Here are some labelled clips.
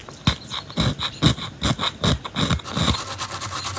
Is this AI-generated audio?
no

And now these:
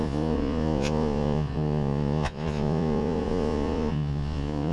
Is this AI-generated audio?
yes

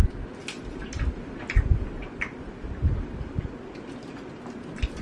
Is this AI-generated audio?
no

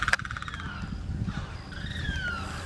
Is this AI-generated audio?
no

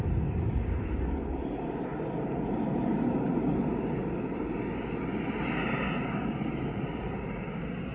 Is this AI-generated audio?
no